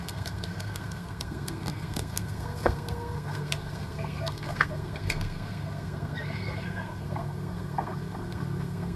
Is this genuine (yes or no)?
no